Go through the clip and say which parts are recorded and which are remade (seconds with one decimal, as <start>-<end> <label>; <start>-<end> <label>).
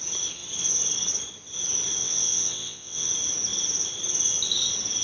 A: 0.0-2.0 recorded; 2.0-3.1 remade; 3.1-5.0 recorded